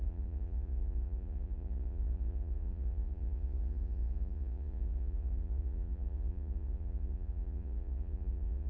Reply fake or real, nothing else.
fake